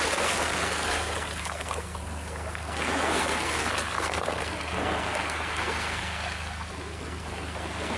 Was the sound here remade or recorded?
remade